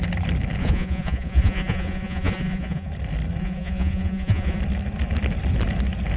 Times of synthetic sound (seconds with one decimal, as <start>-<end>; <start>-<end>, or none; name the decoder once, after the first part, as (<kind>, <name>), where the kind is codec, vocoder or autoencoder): 0.6-2.9 (vocoder, Vocos); 3.4-4.6